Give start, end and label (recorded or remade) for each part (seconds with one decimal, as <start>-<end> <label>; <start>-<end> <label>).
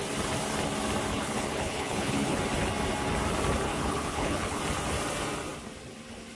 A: 0.0-1.1 recorded; 1.1-2.4 remade; 2.4-3.7 recorded; 3.7-4.6 remade; 4.6-6.3 recorded